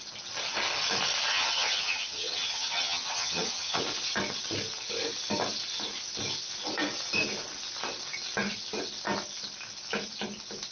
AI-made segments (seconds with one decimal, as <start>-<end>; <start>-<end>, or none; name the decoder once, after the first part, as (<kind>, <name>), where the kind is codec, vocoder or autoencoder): 1.3-3.8 (vocoder, HiFi-GAN)